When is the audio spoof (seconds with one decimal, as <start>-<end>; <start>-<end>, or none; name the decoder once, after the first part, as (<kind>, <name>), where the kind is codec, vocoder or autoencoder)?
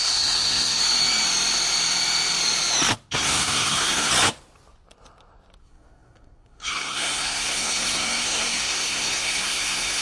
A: 0.0-0.8 (codec, SNAC); 3.1-4.1; 5.6-10.0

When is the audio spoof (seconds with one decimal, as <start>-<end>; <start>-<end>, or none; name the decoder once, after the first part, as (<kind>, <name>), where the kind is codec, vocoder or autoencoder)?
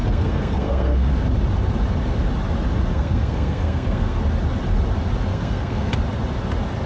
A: 0.0-1.1 (codec, SNAC); 2.9-4.2; 5.3-5.9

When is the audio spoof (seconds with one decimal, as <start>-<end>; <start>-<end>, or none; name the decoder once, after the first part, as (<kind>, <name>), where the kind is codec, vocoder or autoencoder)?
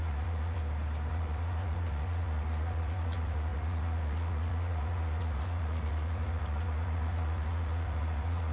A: 0.0-0.6 (vocoder, Vocos); 1.1-8.5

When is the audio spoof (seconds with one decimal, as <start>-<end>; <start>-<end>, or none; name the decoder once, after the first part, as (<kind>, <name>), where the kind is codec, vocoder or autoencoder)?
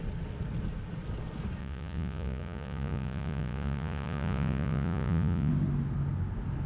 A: 1.6-5.5 (vocoder, Vocos)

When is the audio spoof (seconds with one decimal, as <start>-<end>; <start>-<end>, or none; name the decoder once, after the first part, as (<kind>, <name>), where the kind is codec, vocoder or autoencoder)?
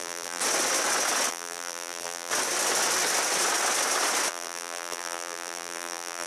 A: 0.0-0.4 (vocoder, BigVGAN v2); 1.3-2.3; 4.3-6.3